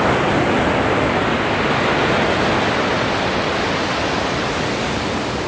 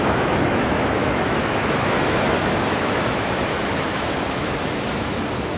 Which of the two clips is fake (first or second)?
second